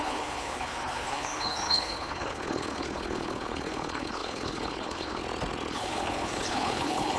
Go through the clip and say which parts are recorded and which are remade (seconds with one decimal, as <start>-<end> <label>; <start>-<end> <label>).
0.0-5.2 remade; 5.2-5.7 recorded; 5.7-7.2 remade